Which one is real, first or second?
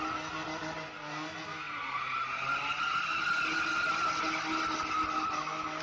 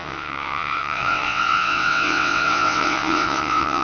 first